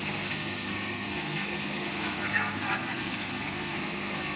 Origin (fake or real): fake